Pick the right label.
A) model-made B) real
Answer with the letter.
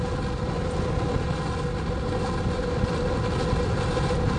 B